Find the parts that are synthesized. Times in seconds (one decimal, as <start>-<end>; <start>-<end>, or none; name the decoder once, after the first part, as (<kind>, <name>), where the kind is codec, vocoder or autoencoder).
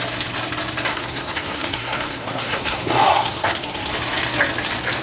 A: 0.9-3.9 (codec, SNAC)